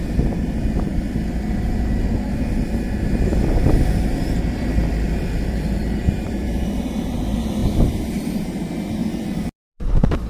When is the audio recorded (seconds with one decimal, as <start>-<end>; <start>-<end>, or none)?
0.9-2.3